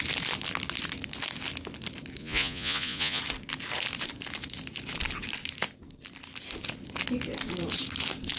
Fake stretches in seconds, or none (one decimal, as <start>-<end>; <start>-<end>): 2.2-3.2